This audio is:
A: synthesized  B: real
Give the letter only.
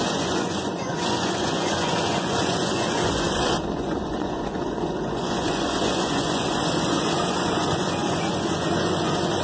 A